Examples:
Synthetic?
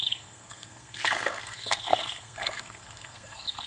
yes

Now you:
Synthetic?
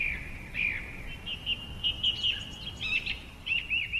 yes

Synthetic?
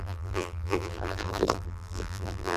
yes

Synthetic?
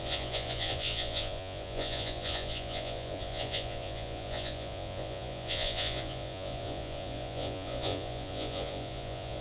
yes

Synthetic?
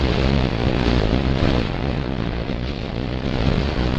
yes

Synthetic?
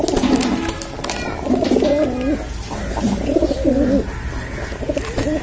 no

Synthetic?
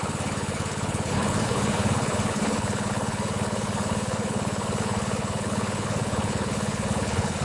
yes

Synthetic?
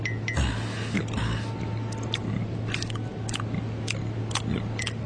no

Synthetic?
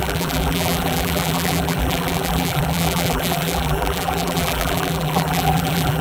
yes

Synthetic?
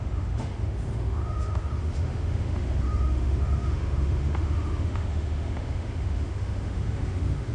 yes